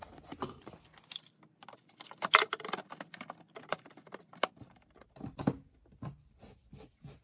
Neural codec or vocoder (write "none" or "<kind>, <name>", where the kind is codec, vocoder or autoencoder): none